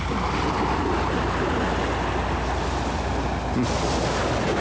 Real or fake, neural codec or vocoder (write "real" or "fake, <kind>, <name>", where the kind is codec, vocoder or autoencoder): real